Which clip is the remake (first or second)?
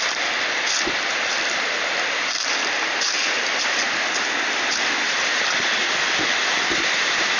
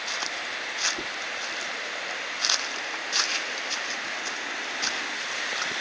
first